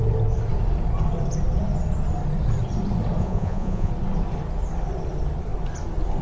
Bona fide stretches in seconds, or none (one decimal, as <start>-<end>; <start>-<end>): 0.0-3.2; 3.9-6.2